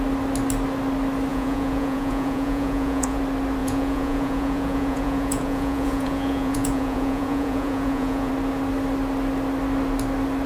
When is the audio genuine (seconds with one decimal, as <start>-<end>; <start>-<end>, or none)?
0.0-1.3; 3.2-3.6; 8.3-10.5